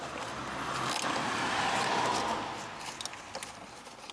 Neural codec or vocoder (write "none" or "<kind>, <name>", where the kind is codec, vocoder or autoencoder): none